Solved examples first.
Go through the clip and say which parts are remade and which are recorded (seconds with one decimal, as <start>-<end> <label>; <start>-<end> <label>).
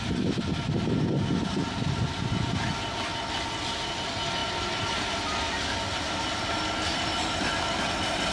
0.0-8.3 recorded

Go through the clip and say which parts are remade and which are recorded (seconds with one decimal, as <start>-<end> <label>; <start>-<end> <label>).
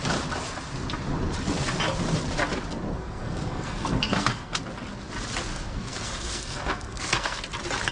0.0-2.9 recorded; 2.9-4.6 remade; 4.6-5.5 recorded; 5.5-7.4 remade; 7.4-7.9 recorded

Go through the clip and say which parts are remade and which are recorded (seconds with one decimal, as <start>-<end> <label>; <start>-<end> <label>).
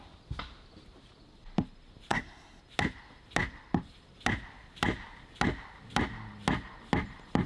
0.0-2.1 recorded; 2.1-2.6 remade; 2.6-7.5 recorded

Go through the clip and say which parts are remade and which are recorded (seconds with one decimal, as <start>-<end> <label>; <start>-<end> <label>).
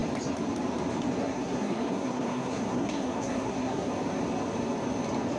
0.0-1.2 recorded; 1.2-3.9 remade; 3.9-5.4 recorded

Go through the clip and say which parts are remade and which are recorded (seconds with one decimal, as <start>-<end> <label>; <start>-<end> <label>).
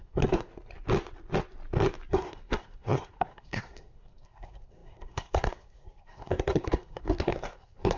0.0-0.5 remade; 0.5-2.1 recorded; 2.1-8.0 remade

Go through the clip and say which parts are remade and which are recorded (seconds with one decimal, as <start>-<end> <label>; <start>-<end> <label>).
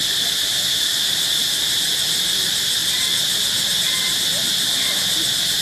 0.0-5.6 recorded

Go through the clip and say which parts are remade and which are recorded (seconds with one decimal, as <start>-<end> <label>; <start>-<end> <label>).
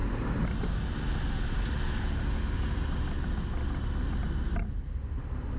0.0-5.6 recorded